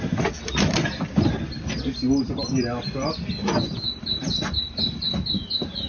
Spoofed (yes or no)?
no